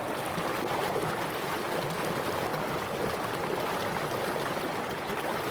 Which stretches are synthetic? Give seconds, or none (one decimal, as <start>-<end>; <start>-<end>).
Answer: none